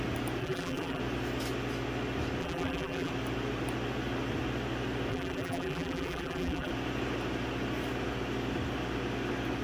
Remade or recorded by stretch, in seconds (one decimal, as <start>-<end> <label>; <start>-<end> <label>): 0.0-0.4 recorded; 0.4-1.0 remade; 1.0-2.4 recorded; 2.4-3.1 remade; 3.1-5.1 recorded; 5.1-6.7 remade; 6.7-9.6 recorded